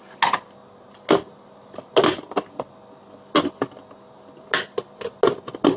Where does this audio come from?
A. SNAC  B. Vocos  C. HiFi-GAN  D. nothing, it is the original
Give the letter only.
D